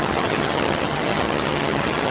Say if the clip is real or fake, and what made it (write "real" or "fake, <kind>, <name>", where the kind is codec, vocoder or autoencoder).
fake, vocoder, HiFi-GAN